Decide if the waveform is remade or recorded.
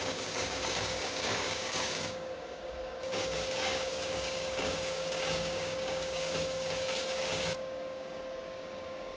remade